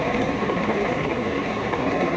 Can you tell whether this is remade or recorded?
remade